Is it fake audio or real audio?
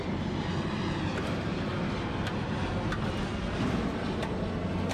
real